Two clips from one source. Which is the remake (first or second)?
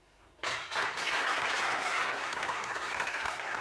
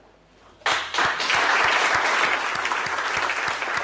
first